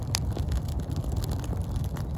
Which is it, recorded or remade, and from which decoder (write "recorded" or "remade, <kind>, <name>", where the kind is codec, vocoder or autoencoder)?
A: recorded